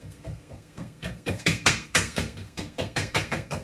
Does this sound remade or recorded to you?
remade